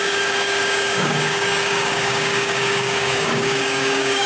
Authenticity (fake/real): fake